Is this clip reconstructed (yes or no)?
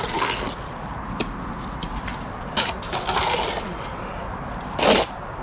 no